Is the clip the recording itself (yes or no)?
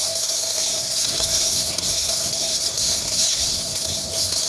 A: no